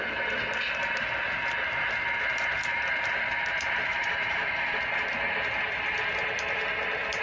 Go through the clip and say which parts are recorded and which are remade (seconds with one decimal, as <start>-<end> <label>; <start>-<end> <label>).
0.0-3.9 recorded; 3.9-4.8 remade; 4.8-7.2 recorded